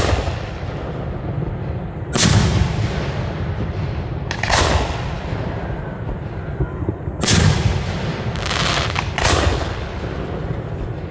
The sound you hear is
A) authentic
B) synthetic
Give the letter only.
A